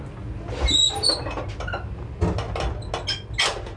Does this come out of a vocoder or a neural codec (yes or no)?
no